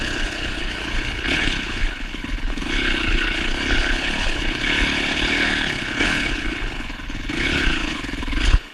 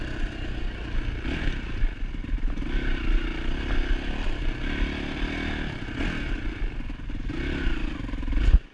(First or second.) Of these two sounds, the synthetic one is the first